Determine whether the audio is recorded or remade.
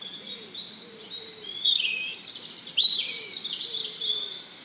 remade